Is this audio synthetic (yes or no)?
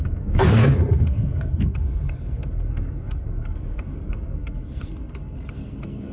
yes